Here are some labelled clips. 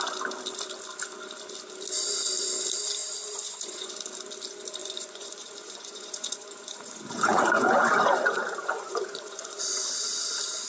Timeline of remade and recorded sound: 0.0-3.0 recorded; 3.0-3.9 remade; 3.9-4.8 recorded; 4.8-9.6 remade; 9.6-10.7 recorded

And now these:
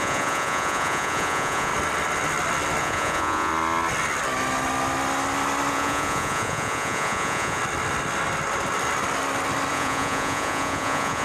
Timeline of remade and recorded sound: 0.0-1.7 remade; 1.7-2.8 recorded; 2.8-3.5 remade; 3.5-5.7 recorded; 5.7-7.6 remade; 7.6-9.7 recorded; 9.7-11.2 remade

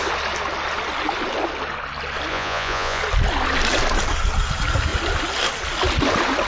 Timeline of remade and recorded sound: 0.0-2.3 recorded; 2.3-3.0 remade; 3.0-6.5 recorded

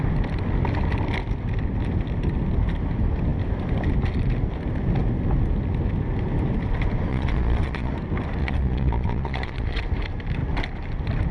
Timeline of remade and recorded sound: 0.0-7.1 recorded; 7.1-7.9 remade; 7.9-8.4 recorded; 8.4-9.8 remade; 9.8-11.3 recorded

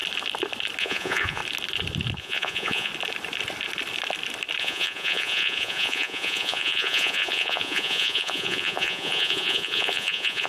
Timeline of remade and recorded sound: 0.0-0.8 recorded; 0.8-1.4 remade; 1.4-2.2 recorded; 2.2-2.9 remade; 2.9-4.6 recorded; 4.6-10.5 remade

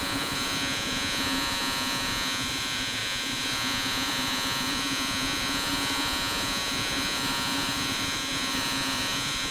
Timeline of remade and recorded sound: 0.0-9.5 remade